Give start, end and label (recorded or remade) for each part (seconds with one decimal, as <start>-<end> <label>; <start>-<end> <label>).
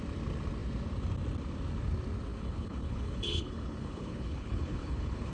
0.0-2.3 recorded; 2.3-5.3 remade